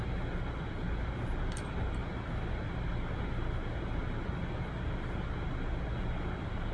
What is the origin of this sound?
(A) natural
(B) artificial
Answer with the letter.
A